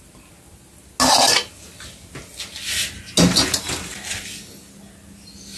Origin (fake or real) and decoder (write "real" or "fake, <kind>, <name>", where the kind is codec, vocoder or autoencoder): real